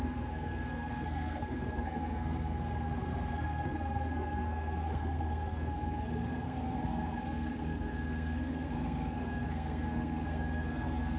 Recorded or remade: remade